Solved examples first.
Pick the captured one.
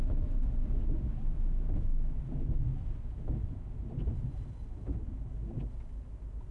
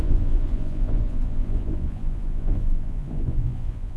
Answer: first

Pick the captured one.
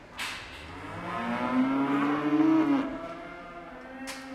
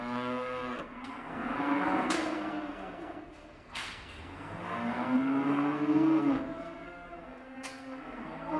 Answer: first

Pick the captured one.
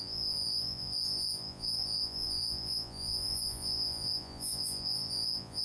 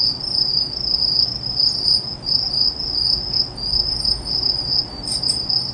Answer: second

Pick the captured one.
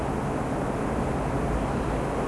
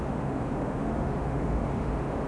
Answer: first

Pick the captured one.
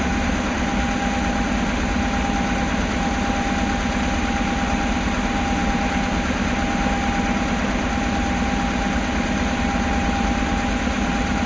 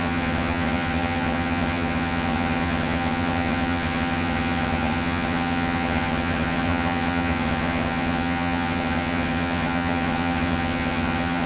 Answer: first